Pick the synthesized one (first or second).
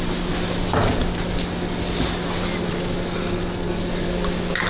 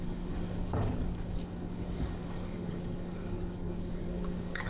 second